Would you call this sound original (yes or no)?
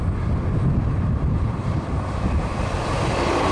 yes